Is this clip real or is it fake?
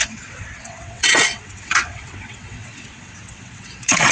fake